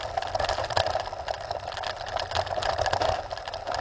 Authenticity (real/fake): real